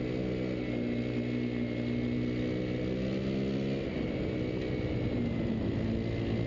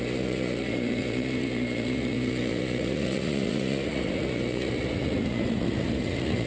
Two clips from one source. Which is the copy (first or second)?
second